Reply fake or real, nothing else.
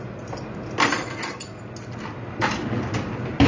real